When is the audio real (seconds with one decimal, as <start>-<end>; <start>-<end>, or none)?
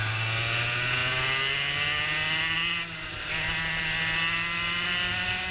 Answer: 0.0-5.5